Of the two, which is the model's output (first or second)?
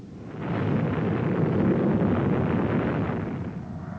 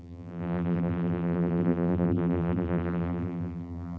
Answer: second